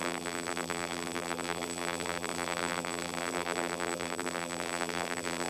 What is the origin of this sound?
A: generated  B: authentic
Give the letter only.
A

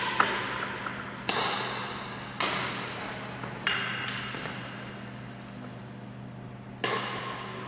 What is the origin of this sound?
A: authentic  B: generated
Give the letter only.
A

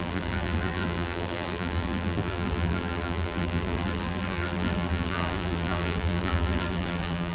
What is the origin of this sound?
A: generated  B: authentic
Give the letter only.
A